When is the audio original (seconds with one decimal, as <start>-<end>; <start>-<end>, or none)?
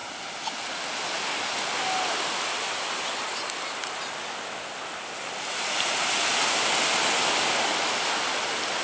0.0-8.8